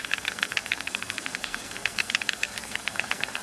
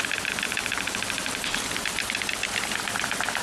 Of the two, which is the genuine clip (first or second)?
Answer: second